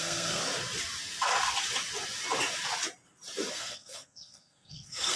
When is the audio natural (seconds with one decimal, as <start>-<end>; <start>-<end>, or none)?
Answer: 0.4-3.5